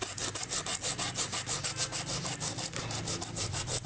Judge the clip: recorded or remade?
recorded